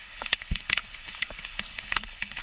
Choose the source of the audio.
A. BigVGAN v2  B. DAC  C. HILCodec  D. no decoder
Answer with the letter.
C